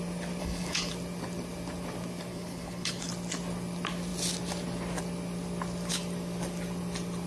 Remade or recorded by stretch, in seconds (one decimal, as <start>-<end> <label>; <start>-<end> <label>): 0.0-0.4 recorded; 0.4-0.9 remade; 0.9-2.3 recorded; 2.3-3.1 remade; 3.1-7.3 recorded

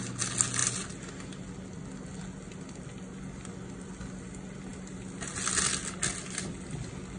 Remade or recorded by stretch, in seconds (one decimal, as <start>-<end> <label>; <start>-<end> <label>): 0.0-7.2 recorded

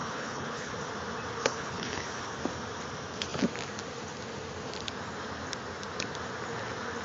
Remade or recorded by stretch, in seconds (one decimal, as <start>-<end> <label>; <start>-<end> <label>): 0.0-0.7 remade; 0.7-1.4 recorded; 1.4-2.3 remade; 2.3-7.0 recorded

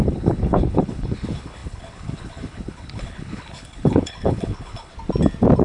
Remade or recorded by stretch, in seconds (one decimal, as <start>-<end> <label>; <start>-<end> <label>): 0.0-4.9 remade; 4.9-5.6 recorded

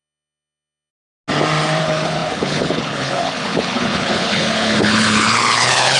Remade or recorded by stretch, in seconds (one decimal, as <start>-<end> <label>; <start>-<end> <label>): 0.0-0.9 remade; 0.9-1.8 recorded; 1.8-6.0 remade

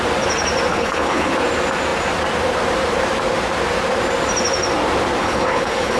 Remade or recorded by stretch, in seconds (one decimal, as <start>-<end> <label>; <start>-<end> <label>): 0.0-0.7 recorded; 0.7-1.3 remade; 1.3-5.2 recorded; 5.2-6.0 remade

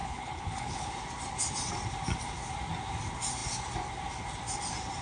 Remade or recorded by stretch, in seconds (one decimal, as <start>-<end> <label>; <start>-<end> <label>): 0.0-0.9 remade; 0.9-5.0 recorded